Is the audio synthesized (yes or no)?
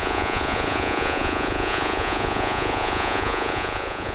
yes